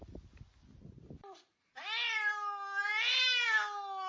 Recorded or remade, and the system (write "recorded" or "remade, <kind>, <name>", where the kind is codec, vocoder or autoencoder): recorded